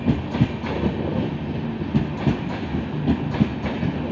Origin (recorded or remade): recorded